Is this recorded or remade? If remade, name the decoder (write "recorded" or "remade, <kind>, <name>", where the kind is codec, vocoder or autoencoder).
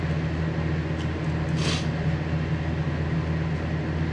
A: recorded